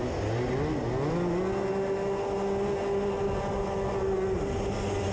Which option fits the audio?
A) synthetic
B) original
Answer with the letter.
B